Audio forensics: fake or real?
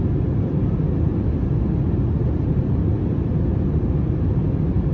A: real